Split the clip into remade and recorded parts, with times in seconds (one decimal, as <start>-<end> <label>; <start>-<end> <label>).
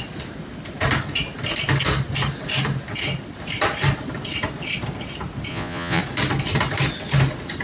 0.0-5.5 recorded; 5.5-6.0 remade; 6.0-7.6 recorded